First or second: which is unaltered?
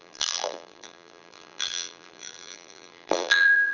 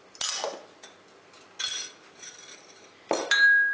second